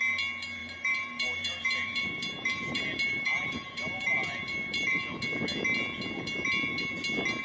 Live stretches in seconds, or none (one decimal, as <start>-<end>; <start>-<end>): 0.0-0.6; 5.0-7.4